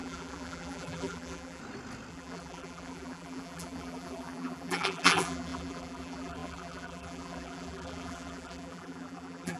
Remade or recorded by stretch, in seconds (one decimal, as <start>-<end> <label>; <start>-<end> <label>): 0.0-1.6 remade; 1.6-2.1 recorded; 2.1-9.6 remade